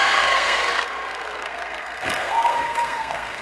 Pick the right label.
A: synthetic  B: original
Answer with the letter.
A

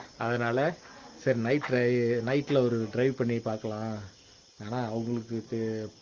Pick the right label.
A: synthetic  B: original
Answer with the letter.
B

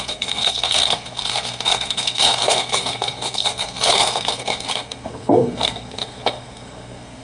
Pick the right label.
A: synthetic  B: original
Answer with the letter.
A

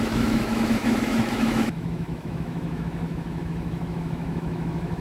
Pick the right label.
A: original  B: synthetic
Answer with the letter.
B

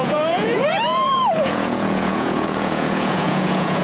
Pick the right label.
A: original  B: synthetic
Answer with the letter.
B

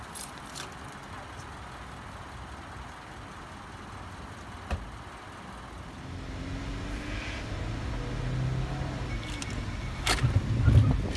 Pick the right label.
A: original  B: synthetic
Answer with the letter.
A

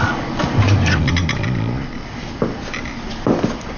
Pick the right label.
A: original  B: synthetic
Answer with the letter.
A